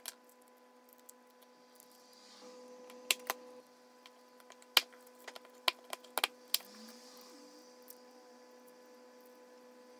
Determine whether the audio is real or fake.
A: real